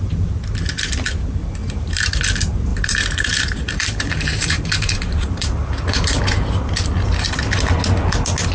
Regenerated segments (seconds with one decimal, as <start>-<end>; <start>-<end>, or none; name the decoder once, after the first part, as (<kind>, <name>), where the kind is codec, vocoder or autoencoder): 1.6-2.2 (vocoder, BigVGAN v2); 2.7-6.2